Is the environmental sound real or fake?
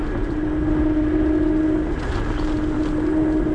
real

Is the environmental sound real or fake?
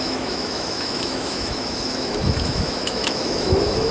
fake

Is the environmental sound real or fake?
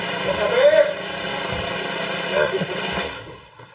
real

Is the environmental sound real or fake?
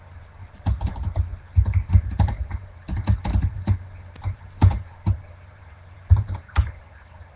fake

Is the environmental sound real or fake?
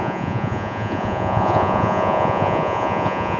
fake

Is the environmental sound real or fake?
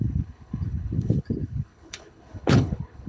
fake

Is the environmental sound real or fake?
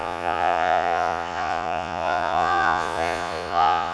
fake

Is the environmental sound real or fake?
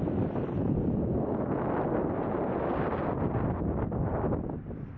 real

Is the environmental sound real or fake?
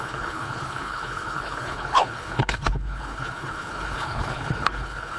fake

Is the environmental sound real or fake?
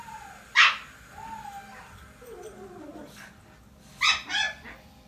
real